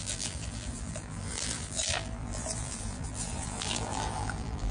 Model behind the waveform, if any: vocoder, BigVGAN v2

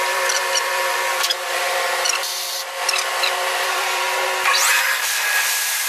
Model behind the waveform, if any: vocoder, BigVGAN v2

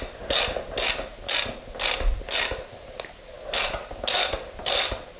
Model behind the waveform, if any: none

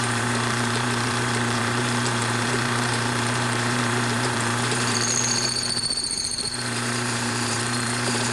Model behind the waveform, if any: vocoder, BigVGAN v2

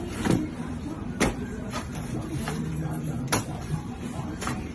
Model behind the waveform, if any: vocoder, BigVGAN v2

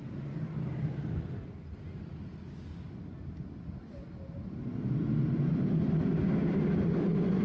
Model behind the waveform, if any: none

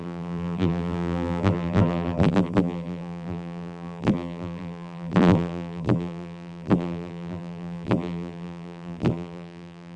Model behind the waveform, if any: vocoder, BigVGAN v2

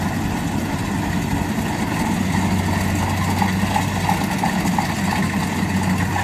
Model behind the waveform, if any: none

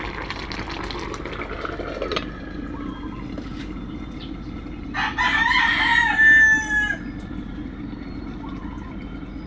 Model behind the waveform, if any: none